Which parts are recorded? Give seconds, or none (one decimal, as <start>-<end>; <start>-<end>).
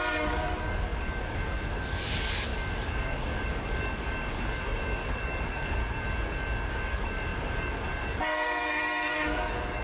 5.8-6.7